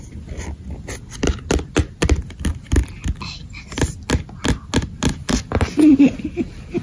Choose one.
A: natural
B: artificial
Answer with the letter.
A